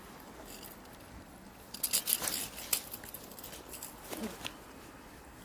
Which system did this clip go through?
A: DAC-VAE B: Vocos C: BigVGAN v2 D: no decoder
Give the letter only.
D